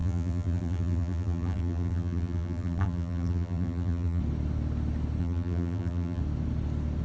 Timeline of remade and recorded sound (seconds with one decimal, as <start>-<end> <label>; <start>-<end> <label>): 0.0-4.2 remade; 4.2-5.2 recorded; 5.2-6.2 remade; 6.2-7.0 recorded